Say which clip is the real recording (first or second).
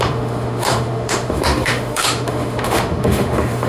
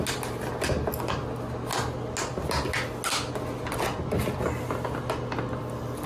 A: second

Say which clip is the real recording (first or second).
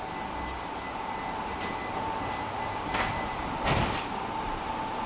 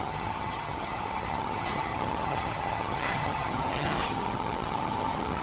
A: first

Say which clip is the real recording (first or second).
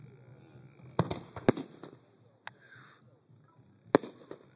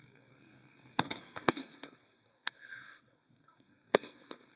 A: first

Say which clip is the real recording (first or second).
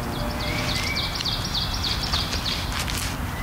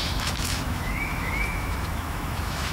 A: first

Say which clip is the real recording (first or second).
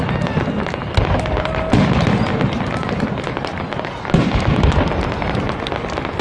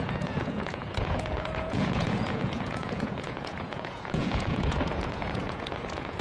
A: first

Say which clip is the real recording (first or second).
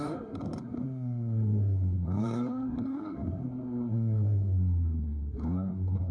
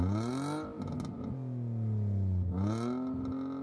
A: second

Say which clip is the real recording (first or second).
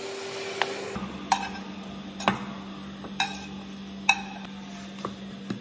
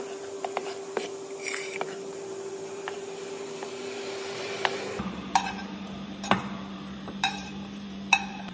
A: first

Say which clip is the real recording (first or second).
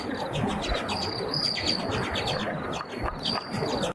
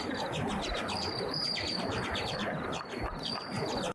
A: first